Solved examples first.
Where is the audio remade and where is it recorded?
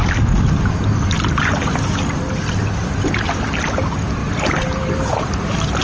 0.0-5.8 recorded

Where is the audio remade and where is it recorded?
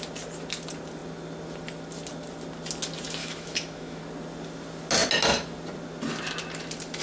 0.0-3.2 recorded; 3.2-4.0 remade; 4.0-7.0 recorded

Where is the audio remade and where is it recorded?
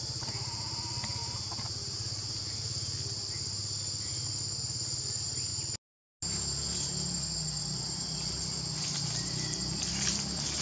0.0-10.6 recorded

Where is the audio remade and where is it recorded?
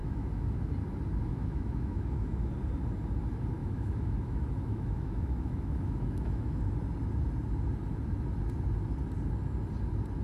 0.0-0.7 remade; 0.7-1.3 recorded; 1.3-2.5 remade; 2.5-3.6 recorded; 3.6-6.6 remade; 6.6-10.2 recorded